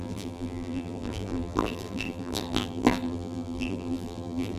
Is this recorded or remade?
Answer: remade